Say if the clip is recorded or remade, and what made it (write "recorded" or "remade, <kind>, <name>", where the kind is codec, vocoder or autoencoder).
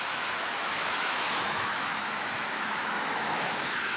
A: remade, autoencoder, DAC-VAE